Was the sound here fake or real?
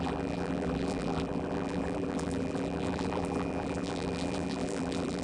fake